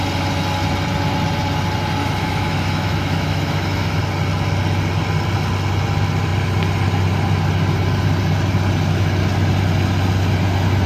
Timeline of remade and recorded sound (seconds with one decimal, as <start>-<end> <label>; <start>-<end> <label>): 0.0-2.0 recorded; 2.0-4.0 remade; 4.0-10.9 recorded